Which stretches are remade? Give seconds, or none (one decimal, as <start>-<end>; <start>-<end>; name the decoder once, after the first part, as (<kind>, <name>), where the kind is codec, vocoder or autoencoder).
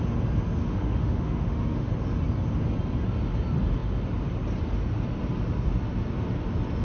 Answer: 0.6-1.9 (autoencoder, DAC-VAE)